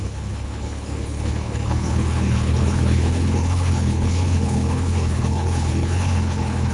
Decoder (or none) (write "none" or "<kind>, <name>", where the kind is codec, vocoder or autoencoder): codec, HILCodec